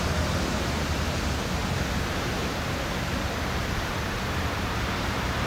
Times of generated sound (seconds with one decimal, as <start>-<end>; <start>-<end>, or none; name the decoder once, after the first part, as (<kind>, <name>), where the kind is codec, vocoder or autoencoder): 0.0-1.4 (vocoder, BigVGAN v2); 4.7-5.5